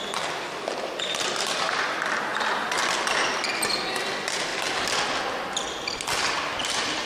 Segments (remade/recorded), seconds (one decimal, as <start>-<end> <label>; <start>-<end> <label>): 0.0-7.1 recorded